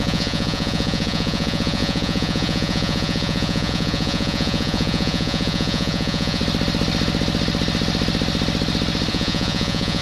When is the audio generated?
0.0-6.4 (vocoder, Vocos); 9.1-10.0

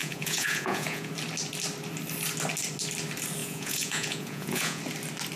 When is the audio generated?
0.0-1.1 (vocoder, Vocos); 3.4-4.8

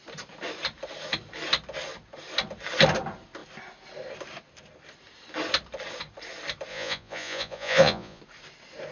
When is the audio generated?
6.7-8.2 (vocoder, Vocos)